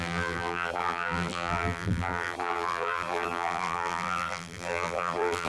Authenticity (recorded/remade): remade